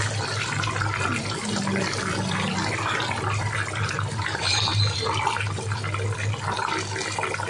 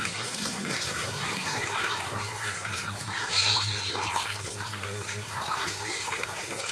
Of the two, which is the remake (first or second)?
second